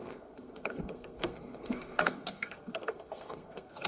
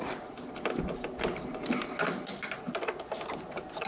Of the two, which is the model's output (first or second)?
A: first